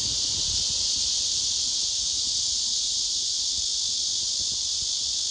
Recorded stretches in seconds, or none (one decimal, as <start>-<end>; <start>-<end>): 3.2-5.3